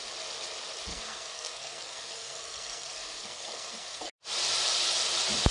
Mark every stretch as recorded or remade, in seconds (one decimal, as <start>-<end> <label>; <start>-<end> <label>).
0.0-0.9 recorded; 0.9-4.1 remade; 4.1-5.5 recorded